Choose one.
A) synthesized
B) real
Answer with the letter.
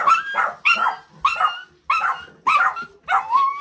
B